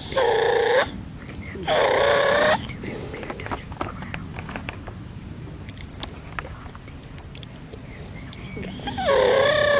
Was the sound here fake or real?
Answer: real